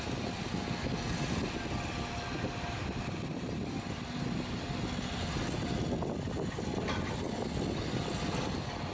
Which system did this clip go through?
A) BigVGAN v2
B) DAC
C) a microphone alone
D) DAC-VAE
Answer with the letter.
C